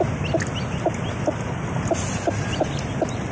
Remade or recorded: recorded